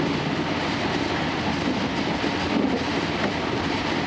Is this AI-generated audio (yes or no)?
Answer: yes